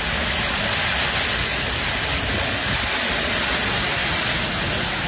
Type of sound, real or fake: real